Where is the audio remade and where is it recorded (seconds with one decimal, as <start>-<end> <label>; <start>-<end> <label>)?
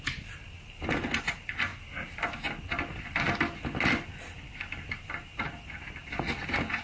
0.0-6.8 recorded